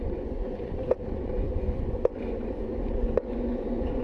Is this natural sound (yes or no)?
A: no